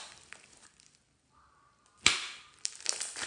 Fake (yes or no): no